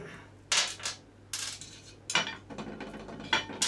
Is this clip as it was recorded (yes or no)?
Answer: yes